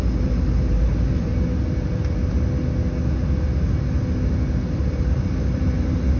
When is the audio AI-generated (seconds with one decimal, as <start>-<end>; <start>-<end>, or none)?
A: 0.0-1.3; 4.7-6.2